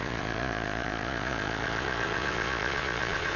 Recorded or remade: remade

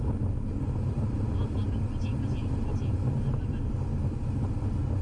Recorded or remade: recorded